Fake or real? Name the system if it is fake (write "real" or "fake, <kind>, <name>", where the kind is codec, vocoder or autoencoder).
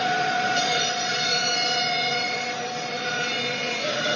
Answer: fake, vocoder, Vocos